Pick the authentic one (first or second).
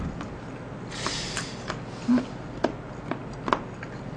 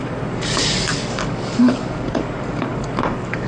first